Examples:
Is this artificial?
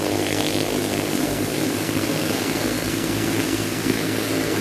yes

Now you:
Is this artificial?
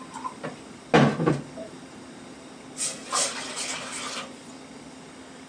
no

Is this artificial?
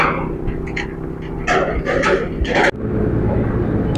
no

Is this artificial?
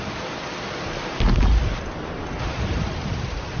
no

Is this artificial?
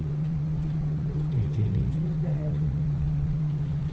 yes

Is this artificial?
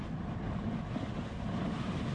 no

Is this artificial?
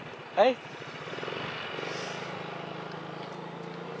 no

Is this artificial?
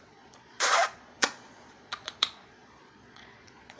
yes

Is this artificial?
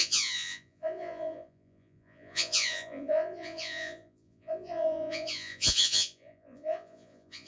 yes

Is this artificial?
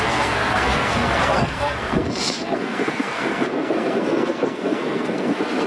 yes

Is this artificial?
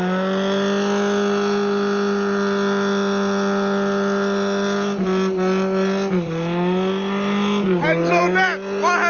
no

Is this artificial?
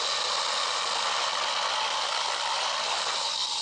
no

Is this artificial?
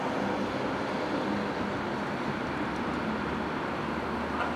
no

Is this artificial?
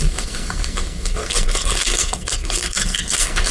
yes